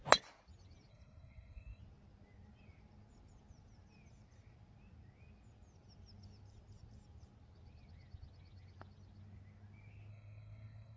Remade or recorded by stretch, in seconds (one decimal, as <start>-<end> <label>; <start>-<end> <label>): 0.0-0.9 recorded; 0.9-1.8 remade; 1.8-10.1 recorded; 10.1-11.0 remade